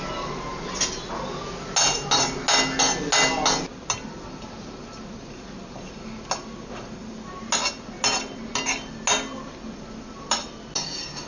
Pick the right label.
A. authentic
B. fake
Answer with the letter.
A